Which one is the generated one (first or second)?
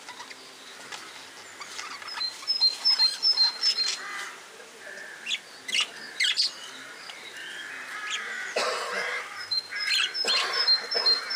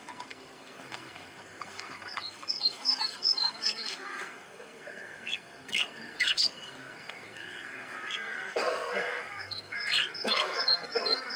second